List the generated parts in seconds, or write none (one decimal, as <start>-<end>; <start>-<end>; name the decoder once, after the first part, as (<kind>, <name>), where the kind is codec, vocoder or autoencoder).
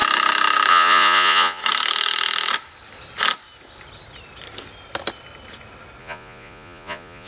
0.7-1.6 (vocoder, Vocos); 6.0-7.3